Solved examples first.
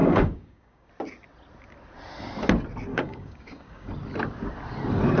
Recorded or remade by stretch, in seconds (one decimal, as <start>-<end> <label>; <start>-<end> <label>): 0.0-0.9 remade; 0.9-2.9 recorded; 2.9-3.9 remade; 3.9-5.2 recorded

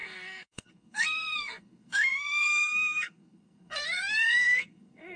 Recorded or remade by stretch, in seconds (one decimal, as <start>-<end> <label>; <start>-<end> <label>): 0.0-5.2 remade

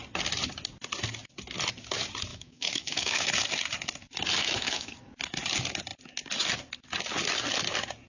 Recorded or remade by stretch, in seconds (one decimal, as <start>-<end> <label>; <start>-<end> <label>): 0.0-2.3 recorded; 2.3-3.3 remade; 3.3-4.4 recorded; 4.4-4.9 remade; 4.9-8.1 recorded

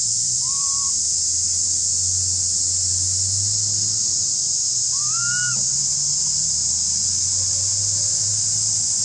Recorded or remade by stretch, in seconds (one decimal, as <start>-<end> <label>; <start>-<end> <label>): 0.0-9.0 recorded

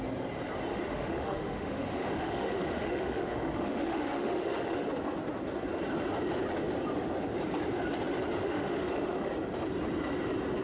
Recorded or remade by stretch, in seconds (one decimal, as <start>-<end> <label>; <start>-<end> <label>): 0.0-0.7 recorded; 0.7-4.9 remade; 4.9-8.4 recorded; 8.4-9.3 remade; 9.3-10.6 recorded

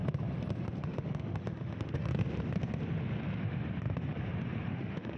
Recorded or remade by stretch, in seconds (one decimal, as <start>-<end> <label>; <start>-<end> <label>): 0.0-0.8 recorded; 0.8-2.1 remade; 2.1-4.7 recorded; 4.7-5.2 remade

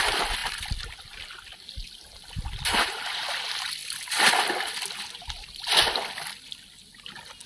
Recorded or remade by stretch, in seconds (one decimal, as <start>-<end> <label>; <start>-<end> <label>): 0.0-0.4 recorded; 0.4-3.4 remade; 3.4-7.5 recorded

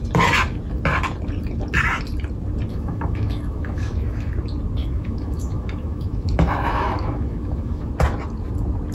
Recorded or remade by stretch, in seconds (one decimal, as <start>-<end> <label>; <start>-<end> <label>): 0.0-2.7 recorded; 2.7-4.3 remade; 4.3-4.8 recorded; 4.8-7.9 remade; 7.9-8.9 recorded